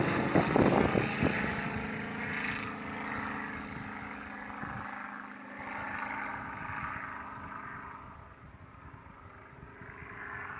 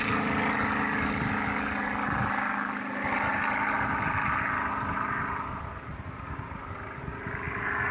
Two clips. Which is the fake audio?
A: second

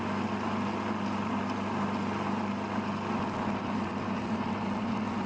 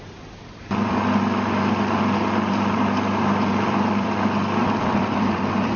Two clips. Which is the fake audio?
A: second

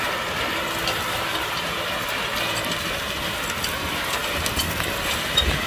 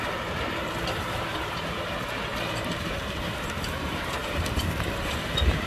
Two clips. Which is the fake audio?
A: second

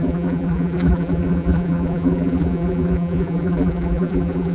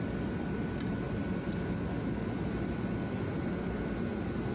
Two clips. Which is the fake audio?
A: first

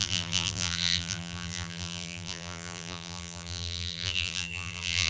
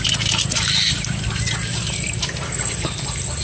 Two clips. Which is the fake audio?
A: first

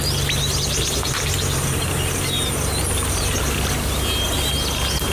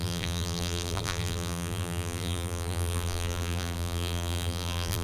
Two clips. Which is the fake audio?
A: second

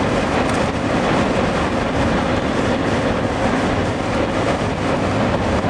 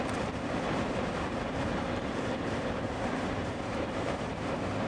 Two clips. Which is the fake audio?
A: second